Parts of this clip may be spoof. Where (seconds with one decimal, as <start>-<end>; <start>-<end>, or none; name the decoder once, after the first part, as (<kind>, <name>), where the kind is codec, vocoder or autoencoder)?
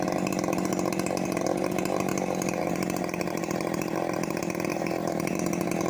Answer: 4.7-5.4 (vocoder, BigVGAN v2)